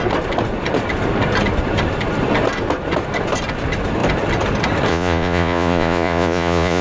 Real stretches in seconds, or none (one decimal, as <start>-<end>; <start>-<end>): 0.0-4.9